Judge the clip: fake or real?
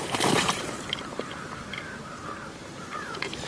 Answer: fake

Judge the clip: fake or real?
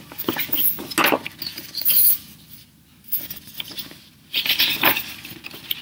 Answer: real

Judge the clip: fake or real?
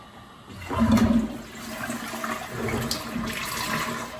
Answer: real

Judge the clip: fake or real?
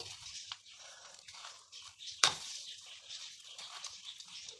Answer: fake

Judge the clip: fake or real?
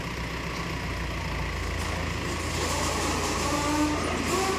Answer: real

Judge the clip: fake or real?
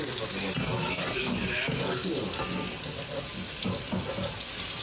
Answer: real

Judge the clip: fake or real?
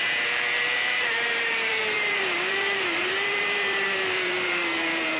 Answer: fake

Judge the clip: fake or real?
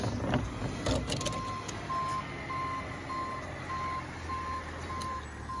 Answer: real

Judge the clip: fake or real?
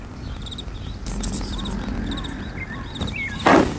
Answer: real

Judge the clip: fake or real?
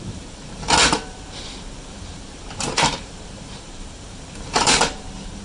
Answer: fake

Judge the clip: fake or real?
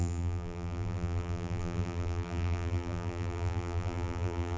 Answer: fake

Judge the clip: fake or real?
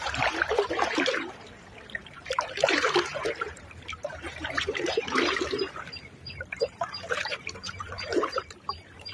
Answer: fake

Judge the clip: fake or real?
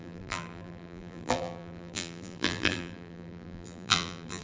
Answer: fake